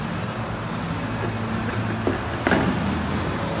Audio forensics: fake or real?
real